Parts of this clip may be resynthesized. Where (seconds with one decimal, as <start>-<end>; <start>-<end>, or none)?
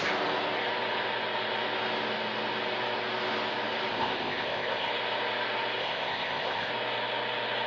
3.9-4.9; 5.8-6.7